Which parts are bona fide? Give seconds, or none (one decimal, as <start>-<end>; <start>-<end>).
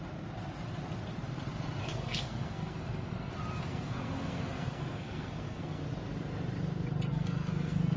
0.0-1.8; 3.3-3.7; 5.8-7.1